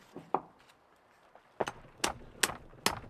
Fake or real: real